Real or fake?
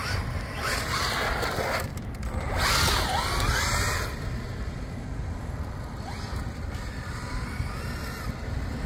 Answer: real